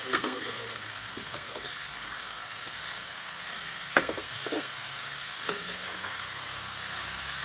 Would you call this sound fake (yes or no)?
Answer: yes